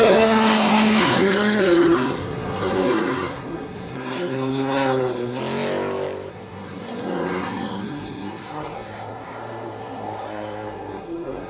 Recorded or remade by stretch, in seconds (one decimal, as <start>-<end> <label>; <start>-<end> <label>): 0.0-5.4 remade; 5.4-6.3 recorded; 6.3-11.5 remade